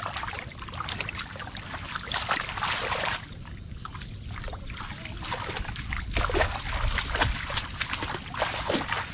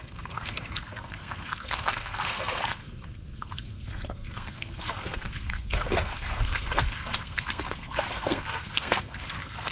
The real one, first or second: first